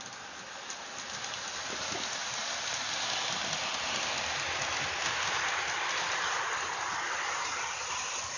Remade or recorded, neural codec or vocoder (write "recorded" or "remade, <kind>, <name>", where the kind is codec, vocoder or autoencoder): recorded